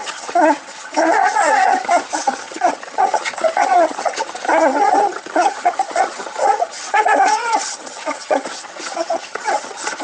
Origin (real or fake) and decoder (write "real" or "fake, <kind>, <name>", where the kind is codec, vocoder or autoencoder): fake, vocoder, HiFi-GAN